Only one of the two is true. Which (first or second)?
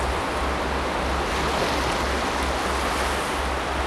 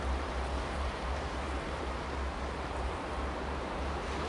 first